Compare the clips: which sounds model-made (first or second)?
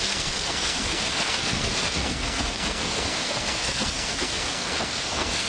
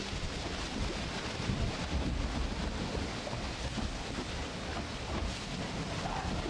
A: first